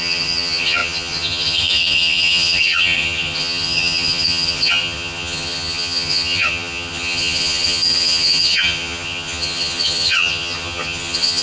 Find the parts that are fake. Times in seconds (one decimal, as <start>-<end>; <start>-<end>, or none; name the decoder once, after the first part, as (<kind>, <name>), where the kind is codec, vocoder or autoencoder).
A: 0.0-11.4 (vocoder, HiFi-GAN)

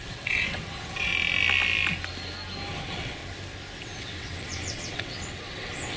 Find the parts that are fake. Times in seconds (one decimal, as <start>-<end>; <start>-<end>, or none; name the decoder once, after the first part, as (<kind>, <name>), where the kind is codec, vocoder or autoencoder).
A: 0.0-1.1 (vocoder, WaveNeXt); 2.8-3.2; 3.8-6.0

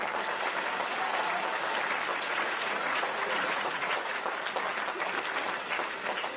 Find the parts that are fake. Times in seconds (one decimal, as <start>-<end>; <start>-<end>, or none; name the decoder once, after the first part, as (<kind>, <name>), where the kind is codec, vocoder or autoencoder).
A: 0.9-1.4 (vocoder, Vocos); 2.1-4.2

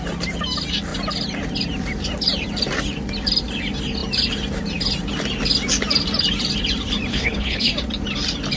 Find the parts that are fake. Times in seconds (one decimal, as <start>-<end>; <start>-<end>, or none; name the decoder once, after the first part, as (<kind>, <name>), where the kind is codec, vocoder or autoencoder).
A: 7.1-7.7 (codec, HILCodec)

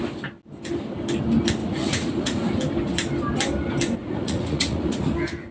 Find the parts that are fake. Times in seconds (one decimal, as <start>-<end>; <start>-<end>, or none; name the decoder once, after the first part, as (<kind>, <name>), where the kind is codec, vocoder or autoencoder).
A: 1.6-2.5 (vocoder, Vocos); 4.0-5.1